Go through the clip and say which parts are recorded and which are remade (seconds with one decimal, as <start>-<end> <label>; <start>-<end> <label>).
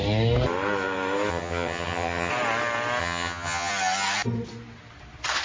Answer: 0.0-1.3 recorded; 1.3-2.3 remade; 2.3-3.0 recorded; 3.0-3.7 remade; 3.7-5.4 recorded